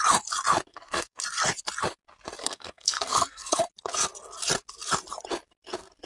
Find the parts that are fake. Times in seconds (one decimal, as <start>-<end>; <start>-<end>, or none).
0.7-1.2; 2.4-3.6